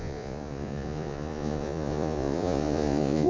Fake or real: fake